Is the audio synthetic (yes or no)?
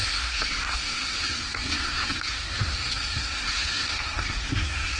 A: yes